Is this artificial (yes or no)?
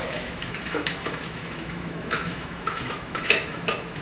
yes